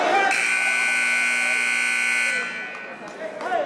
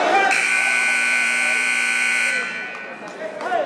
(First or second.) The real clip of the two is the first